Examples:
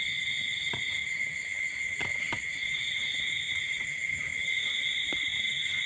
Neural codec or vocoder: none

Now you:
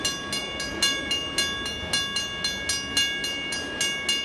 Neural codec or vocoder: none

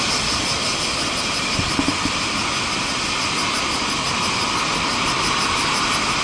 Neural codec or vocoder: none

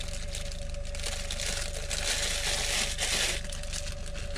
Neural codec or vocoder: none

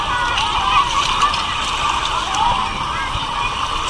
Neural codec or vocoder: vocoder, BigVGAN v2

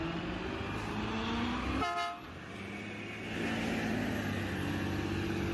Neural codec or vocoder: none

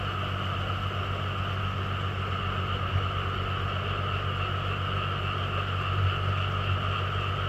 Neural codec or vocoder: none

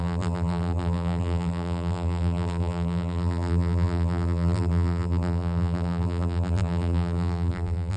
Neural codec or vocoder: vocoder, BigVGAN v2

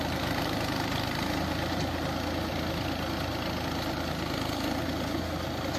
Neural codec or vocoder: none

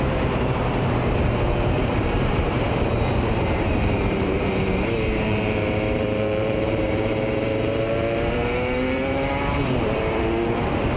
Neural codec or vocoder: vocoder, BigVGAN v2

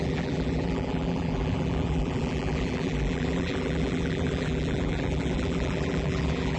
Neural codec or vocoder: vocoder, BigVGAN v2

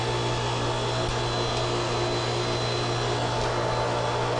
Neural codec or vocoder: none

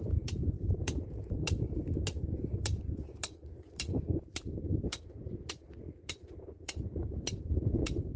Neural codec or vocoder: vocoder, BigVGAN v2